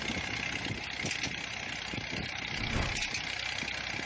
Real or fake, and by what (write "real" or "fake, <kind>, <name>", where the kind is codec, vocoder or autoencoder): real